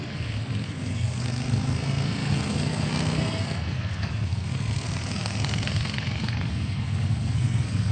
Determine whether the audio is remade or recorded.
remade